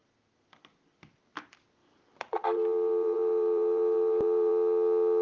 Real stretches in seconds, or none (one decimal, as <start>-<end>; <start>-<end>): 0.0-1.8; 4.5-5.2